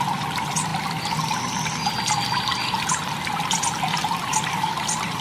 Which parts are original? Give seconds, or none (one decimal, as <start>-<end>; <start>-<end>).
0.0-5.2